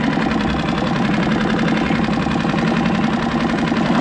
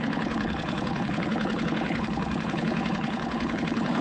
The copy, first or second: second